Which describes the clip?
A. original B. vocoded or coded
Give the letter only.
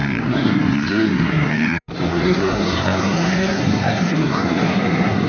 B